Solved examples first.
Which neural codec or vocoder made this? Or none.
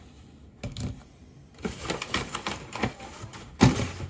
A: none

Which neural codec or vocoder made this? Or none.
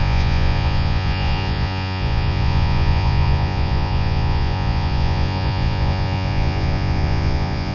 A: vocoder, Vocos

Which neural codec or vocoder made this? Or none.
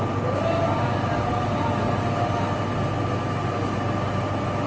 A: none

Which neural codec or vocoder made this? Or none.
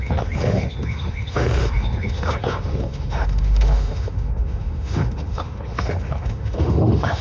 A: autoencoder, DAC-VAE